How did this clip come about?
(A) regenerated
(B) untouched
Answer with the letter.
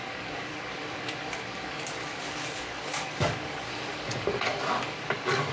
A